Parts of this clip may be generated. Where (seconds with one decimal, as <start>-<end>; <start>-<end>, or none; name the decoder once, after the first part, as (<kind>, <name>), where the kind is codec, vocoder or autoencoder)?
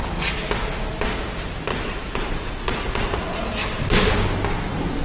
1.7-3.4 (vocoder, Vocos)